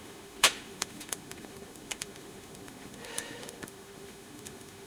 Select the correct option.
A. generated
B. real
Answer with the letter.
A